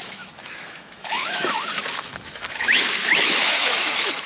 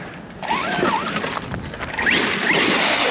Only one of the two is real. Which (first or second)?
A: second